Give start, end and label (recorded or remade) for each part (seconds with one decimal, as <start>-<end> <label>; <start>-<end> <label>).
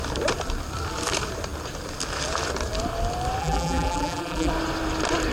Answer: 0.0-3.4 recorded; 3.4-4.5 remade; 4.5-5.3 recorded